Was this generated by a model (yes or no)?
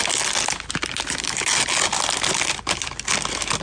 no